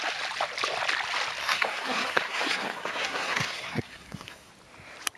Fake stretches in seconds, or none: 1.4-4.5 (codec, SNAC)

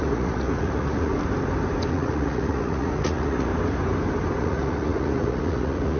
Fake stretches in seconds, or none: 0.0-1.1 (vocoder, Vocos); 1.9-3.5; 4.4-6.0

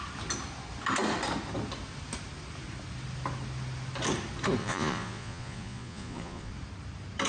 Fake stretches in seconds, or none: 4.6-6.5 (vocoder, Vocos)

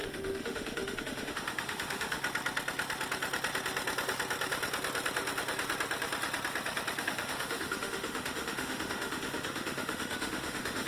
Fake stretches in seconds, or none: 0.0-2.2 (autoencoder, DAC-VAE); 7.0-10.9

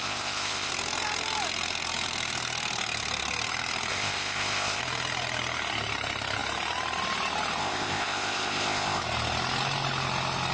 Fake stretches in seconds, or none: 0.0-0.7 (codec, ZipCodec); 3.9-4.8; 7.6-9.0